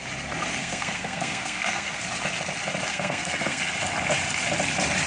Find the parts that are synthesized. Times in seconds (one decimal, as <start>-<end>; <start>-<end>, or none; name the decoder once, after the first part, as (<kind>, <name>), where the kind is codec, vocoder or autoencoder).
0.6-2.0 (codec, SNAC); 2.9-3.6